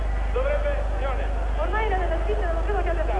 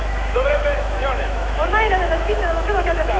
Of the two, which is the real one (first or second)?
first